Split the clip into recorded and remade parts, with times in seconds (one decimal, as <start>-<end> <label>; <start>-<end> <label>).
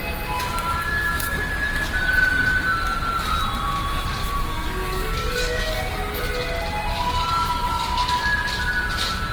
0.0-0.9 recorded; 0.9-1.5 remade; 1.5-4.2 recorded; 4.2-5.8 remade; 5.8-6.9 recorded; 6.9-7.9 remade; 7.9-9.3 recorded